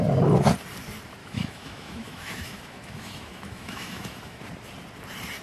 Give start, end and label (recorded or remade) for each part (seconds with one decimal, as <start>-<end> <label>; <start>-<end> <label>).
0.0-1.2 recorded; 1.2-4.4 remade; 4.4-5.4 recorded